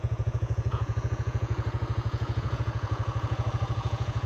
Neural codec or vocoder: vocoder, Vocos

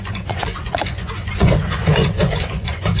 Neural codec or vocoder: vocoder, Vocos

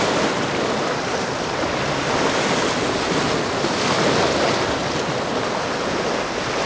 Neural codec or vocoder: none